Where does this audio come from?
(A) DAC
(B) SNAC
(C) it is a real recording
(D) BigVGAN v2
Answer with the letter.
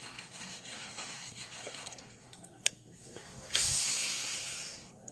B